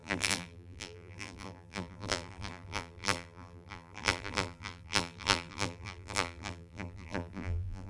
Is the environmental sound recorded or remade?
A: remade